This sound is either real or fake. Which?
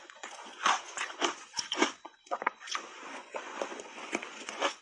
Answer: fake